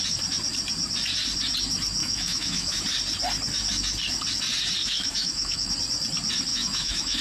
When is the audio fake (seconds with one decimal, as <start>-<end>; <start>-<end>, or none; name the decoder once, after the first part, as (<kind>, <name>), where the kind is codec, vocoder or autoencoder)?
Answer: 2.0-2.8 (autoencoder, DAC-VAE); 4.8-5.7; 6.5-7.2